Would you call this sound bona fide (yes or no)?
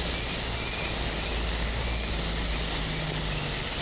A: yes